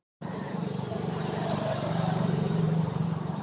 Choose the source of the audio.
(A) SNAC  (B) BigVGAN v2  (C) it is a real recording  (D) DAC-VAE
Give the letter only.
B